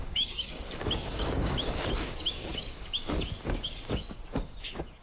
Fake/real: fake